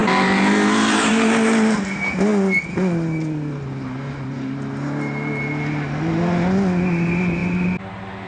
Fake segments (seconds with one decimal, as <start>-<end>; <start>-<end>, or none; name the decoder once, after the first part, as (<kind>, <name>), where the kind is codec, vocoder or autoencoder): 0.0-1.1 (vocoder, BigVGAN v2)